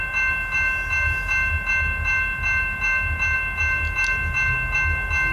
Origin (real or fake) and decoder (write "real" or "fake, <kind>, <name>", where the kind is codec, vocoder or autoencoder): real